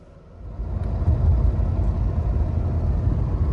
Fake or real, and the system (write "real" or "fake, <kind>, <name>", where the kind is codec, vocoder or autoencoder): real